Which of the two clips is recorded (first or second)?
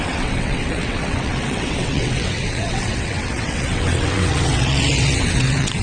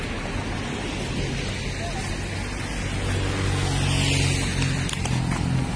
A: second